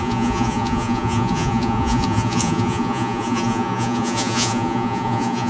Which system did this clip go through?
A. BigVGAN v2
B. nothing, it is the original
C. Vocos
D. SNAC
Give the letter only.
C